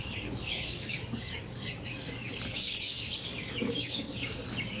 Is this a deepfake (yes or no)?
yes